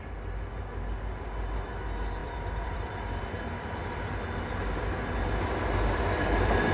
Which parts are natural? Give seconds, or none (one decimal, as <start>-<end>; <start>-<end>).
0.0-2.2; 3.2-6.7